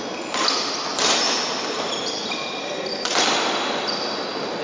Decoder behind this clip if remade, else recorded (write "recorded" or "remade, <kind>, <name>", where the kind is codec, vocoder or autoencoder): recorded